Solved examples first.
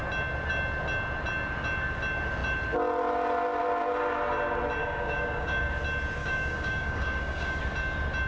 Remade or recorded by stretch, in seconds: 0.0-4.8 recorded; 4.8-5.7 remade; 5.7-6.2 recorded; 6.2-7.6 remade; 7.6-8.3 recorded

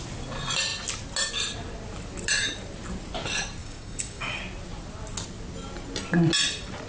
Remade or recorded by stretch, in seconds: 0.0-3.6 recorded; 3.6-4.4 remade; 4.4-6.9 recorded

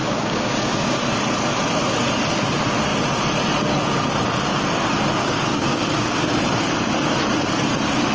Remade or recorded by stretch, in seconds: 0.0-1.0 remade; 1.0-5.2 recorded; 5.2-6.3 remade; 6.3-8.1 recorded